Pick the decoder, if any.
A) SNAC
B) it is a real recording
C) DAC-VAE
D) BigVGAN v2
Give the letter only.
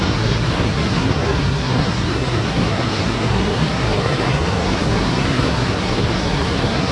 A